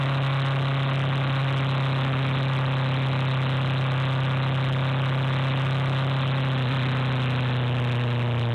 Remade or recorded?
recorded